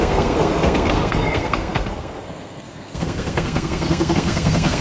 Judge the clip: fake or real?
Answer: fake